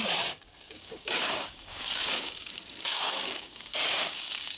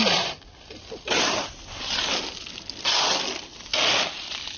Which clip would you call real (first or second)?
second